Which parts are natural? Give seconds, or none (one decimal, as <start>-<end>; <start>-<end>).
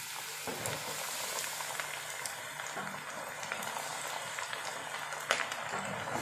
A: 0.0-6.2